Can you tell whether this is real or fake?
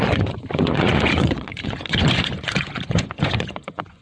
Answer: fake